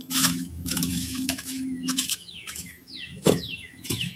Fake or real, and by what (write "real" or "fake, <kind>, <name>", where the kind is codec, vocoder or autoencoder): fake, autoencoder, DAC-VAE